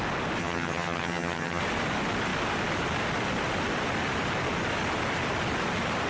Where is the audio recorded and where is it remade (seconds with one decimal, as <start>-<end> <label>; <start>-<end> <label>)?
0.0-0.4 recorded; 0.4-1.6 remade; 1.6-6.1 recorded